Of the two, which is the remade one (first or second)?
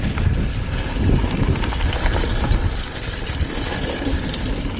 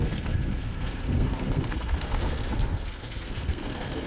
second